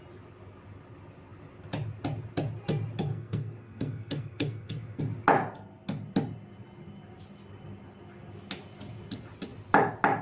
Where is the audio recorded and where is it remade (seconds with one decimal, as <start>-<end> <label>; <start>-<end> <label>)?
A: 0.0-3.1 recorded; 3.1-5.0 remade; 5.0-10.2 recorded